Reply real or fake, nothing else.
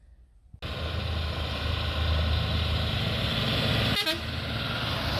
real